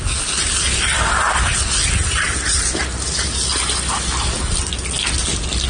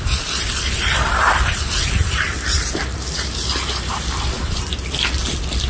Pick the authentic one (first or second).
first